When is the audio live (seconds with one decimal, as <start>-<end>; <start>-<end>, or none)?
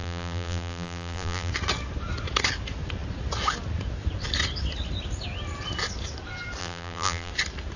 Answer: 1.5-6.6; 7.3-7.8